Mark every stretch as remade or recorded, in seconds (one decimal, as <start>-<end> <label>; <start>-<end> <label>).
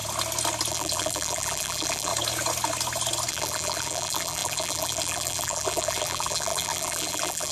0.0-0.7 recorded; 0.7-2.1 remade; 2.1-3.3 recorded; 3.3-7.5 remade